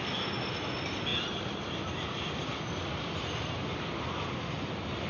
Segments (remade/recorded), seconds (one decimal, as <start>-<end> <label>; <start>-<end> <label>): 0.0-1.1 recorded; 1.1-3.8 remade; 3.8-5.1 recorded